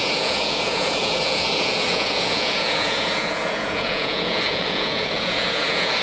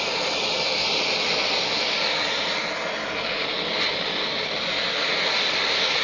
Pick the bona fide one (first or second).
second